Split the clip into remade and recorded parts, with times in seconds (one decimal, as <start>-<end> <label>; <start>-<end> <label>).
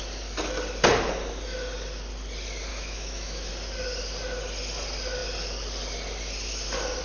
0.0-2.7 recorded; 2.7-3.5 remade; 3.5-7.0 recorded